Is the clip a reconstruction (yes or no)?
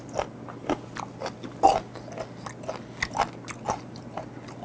no